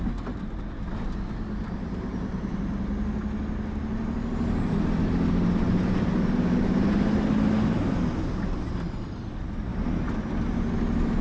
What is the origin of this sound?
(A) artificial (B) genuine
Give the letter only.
B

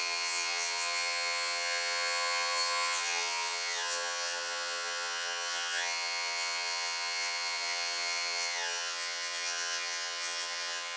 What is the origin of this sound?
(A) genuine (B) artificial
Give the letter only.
B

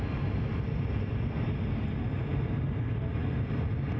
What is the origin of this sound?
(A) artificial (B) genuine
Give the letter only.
B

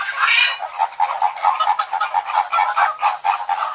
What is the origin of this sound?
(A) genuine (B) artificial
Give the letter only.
A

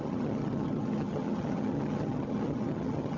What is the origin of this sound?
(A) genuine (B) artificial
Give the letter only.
B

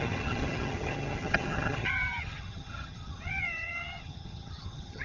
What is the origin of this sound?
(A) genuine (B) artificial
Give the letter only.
B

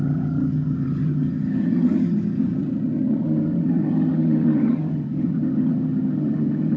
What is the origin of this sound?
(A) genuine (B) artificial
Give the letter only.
B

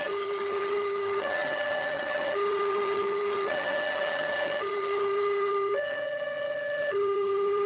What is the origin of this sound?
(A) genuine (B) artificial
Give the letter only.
B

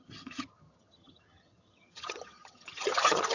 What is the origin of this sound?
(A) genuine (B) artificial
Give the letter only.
B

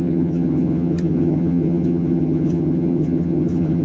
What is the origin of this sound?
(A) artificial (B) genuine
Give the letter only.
A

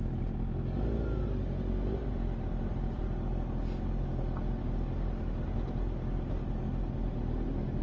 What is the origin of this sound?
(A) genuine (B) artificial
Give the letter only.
A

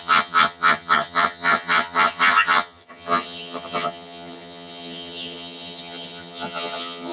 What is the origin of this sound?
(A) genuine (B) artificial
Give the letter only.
B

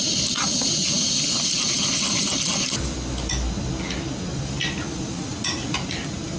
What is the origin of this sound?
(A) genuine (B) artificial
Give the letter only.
A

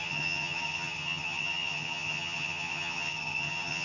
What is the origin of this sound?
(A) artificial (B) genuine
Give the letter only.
A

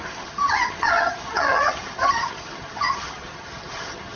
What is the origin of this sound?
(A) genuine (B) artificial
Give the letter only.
B